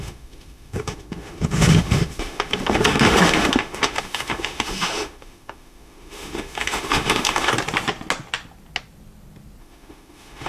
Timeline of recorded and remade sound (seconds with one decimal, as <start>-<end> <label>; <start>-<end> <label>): 0.0-7.5 remade; 7.5-9.6 recorded; 9.6-10.5 remade